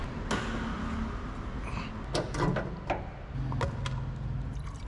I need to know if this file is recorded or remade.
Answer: recorded